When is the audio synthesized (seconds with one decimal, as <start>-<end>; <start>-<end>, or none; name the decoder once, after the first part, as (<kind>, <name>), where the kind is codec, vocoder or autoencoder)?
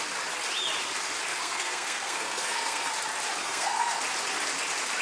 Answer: 1.3-2.9 (codec, SNAC); 3.4-4.0